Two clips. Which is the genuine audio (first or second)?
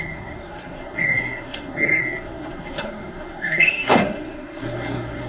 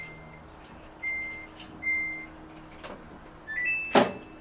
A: second